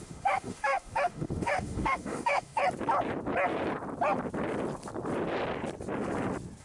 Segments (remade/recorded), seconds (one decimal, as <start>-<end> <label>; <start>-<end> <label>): 0.0-2.6 remade; 2.6-6.6 recorded